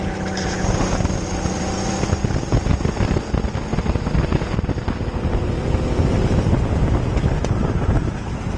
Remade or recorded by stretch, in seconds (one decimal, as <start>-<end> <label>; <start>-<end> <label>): 0.0-8.6 recorded